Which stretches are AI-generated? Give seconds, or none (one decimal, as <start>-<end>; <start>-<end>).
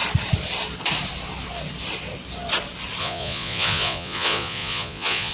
3.0-5.3